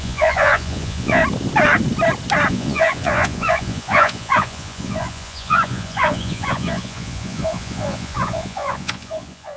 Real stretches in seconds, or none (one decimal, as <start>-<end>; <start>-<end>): 1.2-2.5